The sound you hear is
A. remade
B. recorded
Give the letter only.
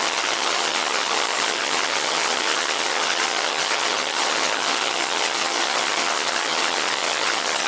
A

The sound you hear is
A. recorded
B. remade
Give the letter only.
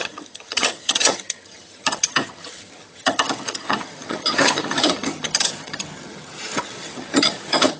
B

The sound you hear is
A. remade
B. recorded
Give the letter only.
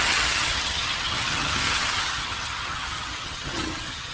A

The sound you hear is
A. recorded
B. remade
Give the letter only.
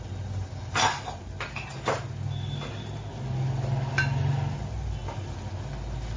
A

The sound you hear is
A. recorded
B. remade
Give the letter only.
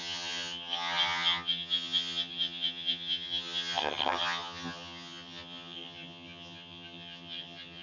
B